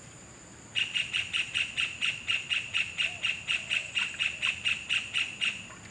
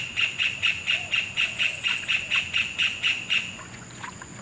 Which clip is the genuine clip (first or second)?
first